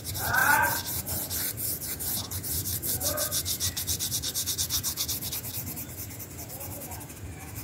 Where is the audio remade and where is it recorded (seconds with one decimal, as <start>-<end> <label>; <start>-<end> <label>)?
0.0-7.6 recorded